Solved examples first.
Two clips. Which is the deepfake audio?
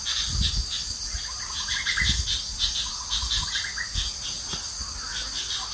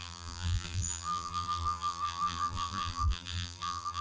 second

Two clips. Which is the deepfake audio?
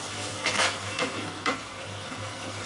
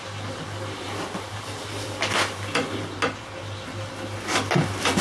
first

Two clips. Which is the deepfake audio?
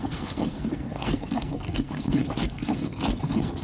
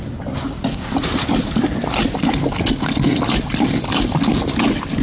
first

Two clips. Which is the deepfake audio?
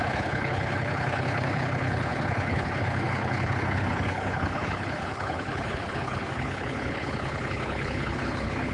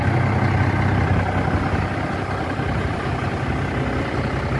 first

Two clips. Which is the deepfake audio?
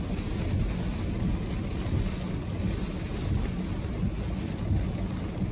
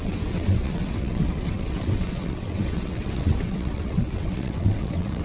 second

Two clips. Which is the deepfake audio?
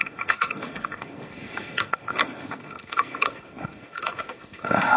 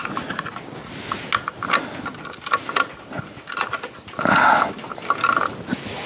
first